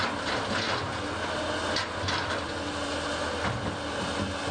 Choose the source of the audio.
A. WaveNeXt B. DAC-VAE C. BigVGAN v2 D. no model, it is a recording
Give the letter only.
D